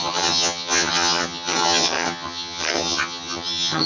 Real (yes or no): no